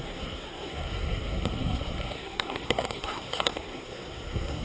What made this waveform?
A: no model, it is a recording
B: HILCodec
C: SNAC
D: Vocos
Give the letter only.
C